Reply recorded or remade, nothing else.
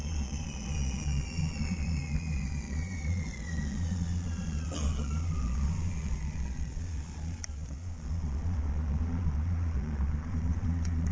remade